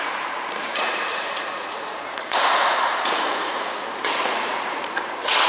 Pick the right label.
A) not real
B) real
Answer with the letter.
A